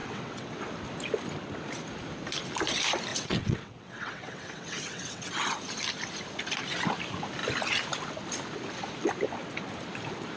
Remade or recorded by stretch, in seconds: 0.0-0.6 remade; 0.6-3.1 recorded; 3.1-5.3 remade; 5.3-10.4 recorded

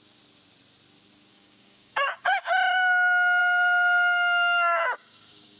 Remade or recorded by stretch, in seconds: 0.0-1.3 recorded; 1.3-2.4 remade; 2.4-3.4 recorded; 3.4-5.6 remade

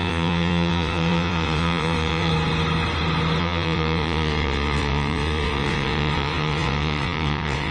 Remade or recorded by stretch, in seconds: 0.0-2.3 remade; 2.3-3.4 recorded; 3.4-7.7 remade

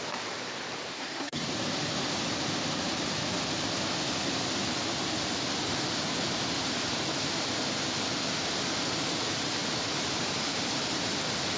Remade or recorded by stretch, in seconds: 0.0-0.9 recorded; 0.9-1.5 remade; 1.5-11.6 recorded

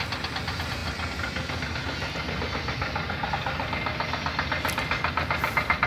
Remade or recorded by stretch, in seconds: 0.0-5.9 recorded

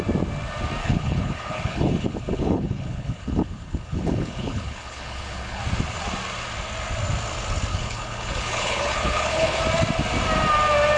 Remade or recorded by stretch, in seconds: 0.0-0.8 recorded; 0.8-5.6 remade; 5.6-7.7 recorded; 7.7-9.6 remade; 9.6-11.0 recorded

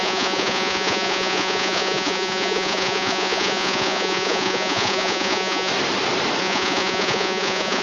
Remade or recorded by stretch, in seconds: 0.0-5.7 remade; 5.7-6.4 recorded; 6.4-7.8 remade

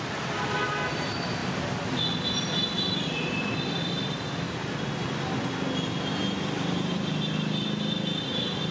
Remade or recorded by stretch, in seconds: 0.0-8.7 recorded